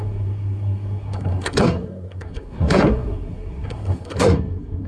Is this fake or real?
fake